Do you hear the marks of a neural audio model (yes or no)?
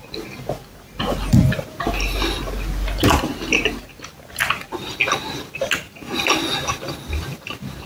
no